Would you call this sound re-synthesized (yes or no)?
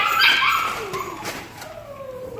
yes